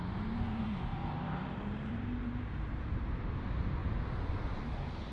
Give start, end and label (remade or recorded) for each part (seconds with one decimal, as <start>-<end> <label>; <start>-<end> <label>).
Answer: 0.0-3.8 remade; 3.8-4.3 recorded; 4.3-5.1 remade